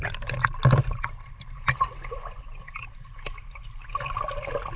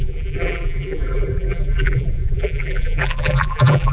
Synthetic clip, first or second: second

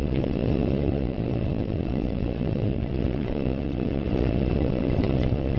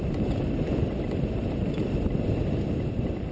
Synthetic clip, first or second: first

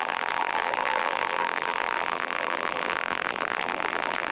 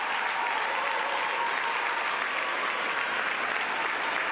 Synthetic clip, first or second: first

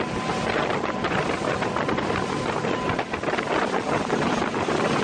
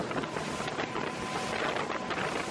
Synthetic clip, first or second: first